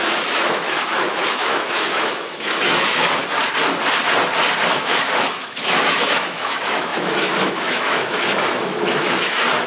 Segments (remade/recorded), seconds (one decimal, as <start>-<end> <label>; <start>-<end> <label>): 0.0-3.2 remade; 3.2-4.7 recorded; 4.7-9.7 remade